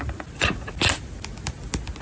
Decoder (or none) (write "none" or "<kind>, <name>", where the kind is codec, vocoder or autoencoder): none